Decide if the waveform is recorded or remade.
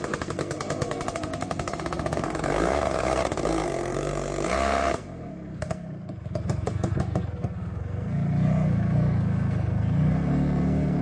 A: remade